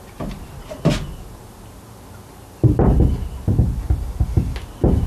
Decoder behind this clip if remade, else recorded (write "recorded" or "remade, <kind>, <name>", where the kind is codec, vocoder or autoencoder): recorded